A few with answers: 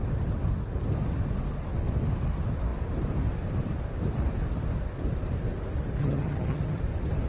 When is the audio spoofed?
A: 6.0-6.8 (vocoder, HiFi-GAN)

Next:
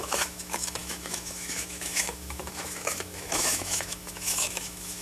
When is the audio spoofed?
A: 0.0-5.0 (autoencoder, DAC-VAE)

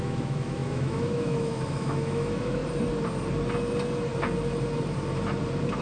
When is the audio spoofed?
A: 0.0-2.6 (autoencoder, DAC-VAE)

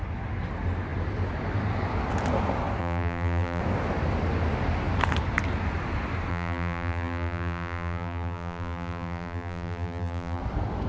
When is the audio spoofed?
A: 2.8-3.6 (vocoder, BigVGAN v2); 6.3-10.4

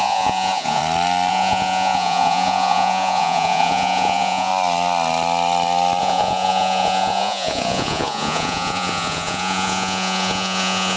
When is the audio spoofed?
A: 0.0-0.8 (vocoder, Vocos); 1.3-4.5; 6.0-11.0

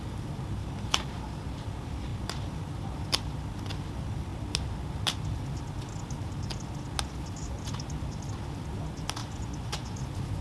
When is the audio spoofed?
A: 9.2-10.0 (vocoder, Vocos)

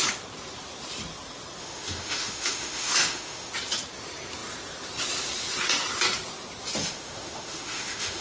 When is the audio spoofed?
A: 1.6-3.5 (autoencoder, DAC-VAE); 6.8-8.2

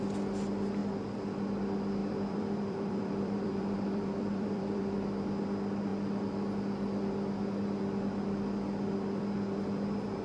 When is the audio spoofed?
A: 2.0-4.8 (vocoder, BigVGAN v2)